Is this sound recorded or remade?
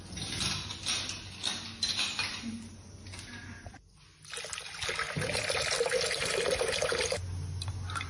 recorded